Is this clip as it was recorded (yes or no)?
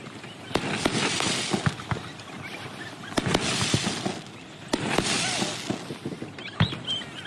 yes